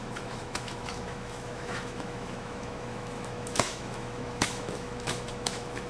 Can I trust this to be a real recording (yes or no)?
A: no